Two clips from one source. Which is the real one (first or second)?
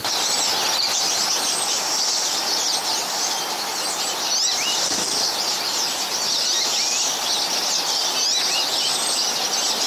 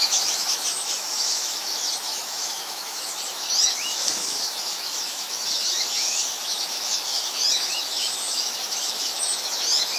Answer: first